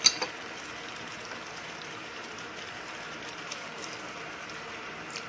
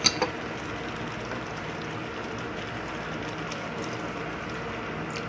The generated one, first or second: first